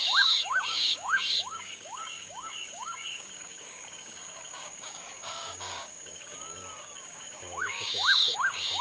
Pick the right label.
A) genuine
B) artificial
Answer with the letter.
B